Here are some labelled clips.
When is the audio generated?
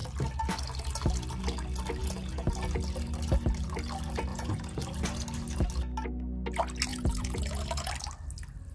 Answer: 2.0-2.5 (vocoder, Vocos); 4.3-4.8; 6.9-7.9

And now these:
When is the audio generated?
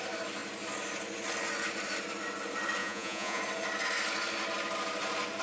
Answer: 2.8-3.4 (vocoder, Vocos)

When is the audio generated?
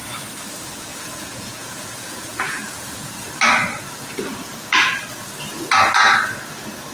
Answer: 0.9-3.3 (vocoder, Vocos)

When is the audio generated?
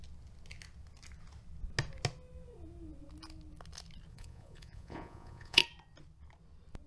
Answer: 4.1-5.6 (vocoder, Vocos)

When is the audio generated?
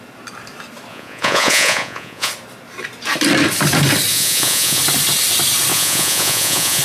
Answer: 0.9-2.3 (vocoder, Vocos); 4.1-4.8; 5.7-6.8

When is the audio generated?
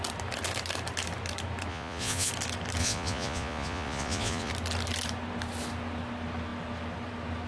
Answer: 1.7-2.3 (vocoder, Vocos); 2.8-4.5